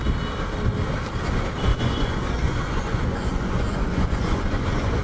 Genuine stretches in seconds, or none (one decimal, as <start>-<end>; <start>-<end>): 0.0-1.7